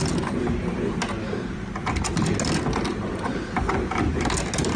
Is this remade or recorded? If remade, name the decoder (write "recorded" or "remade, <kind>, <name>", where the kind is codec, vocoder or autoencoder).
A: recorded